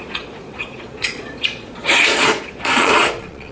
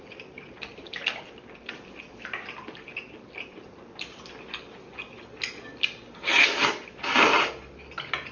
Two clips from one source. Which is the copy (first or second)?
first